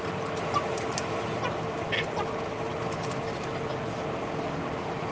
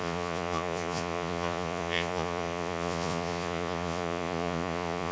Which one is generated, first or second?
second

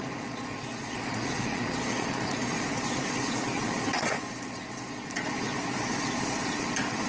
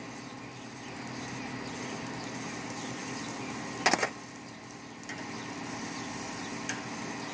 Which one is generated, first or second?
first